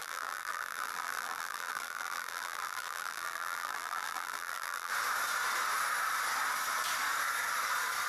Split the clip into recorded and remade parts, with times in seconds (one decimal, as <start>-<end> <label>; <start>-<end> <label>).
0.0-4.9 remade; 4.9-8.1 recorded